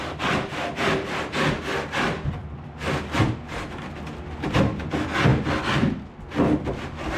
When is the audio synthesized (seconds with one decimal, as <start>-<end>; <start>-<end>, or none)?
none